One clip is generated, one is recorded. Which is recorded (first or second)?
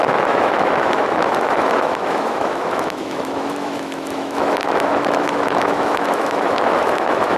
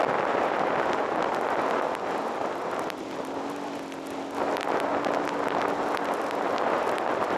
second